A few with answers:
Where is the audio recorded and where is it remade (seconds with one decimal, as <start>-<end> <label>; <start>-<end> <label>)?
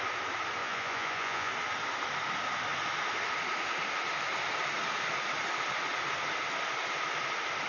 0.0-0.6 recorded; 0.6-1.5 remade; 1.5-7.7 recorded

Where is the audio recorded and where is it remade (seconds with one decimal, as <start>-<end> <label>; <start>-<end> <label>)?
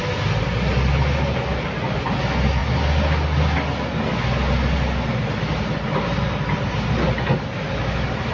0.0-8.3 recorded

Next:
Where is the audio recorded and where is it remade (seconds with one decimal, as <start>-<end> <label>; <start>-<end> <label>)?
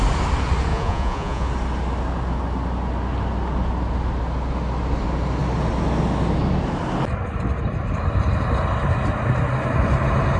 0.0-0.7 recorded; 0.7-1.5 remade; 1.5-10.4 recorded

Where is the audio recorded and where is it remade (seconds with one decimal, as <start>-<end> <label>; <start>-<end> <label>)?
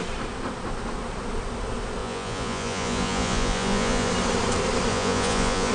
0.0-2.0 recorded; 2.0-4.1 remade; 4.1-4.9 recorded; 4.9-5.7 remade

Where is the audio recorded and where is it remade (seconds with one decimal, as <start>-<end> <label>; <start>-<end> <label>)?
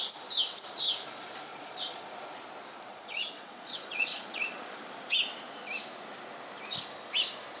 0.0-1.5 recorded; 1.5-2.1 remade; 2.1-2.9 recorded; 2.9-4.8 remade; 4.8-7.6 recorded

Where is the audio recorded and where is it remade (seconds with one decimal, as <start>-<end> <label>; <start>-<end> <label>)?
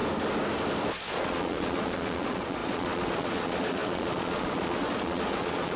0.0-0.9 recorded; 0.9-5.8 remade